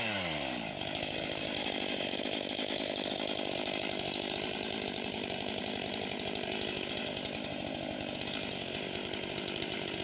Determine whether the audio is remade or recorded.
remade